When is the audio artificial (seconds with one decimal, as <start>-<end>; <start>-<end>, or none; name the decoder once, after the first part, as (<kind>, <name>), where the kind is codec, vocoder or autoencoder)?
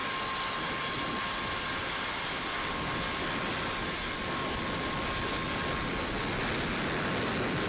none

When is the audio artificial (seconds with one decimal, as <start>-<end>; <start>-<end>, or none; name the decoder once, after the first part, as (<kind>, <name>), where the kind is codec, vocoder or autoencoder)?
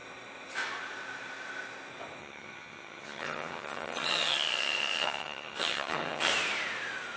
2.2-6.3 (vocoder, HiFi-GAN)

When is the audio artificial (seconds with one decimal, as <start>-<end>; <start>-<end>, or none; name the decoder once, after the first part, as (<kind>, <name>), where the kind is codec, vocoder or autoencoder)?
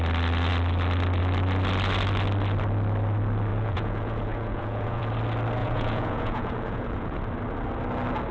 3.5-5.0 (vocoder, Vocos); 5.6-7.2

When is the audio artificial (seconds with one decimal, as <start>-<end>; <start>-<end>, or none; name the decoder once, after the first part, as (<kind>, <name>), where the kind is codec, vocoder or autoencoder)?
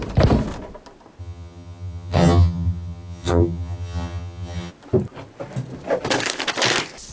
1.2-4.7 (vocoder, HiFi-GAN)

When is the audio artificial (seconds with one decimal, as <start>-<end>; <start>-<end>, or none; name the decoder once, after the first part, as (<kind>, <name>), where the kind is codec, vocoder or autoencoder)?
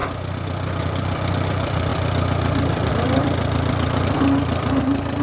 0.8-1.9 (vocoder, BigVGAN v2); 2.9-5.2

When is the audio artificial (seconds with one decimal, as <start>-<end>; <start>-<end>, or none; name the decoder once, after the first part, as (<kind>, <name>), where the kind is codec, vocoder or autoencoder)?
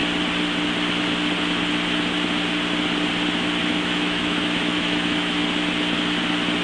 3.6-5.4 (autoencoder, DAC-VAE)